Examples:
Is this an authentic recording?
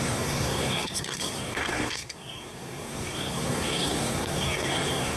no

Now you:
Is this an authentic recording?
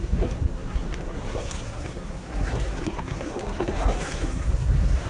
no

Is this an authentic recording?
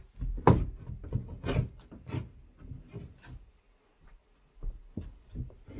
yes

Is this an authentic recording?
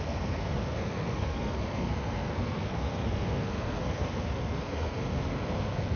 no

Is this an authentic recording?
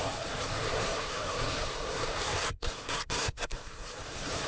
no